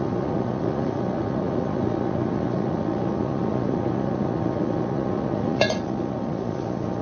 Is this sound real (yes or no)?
no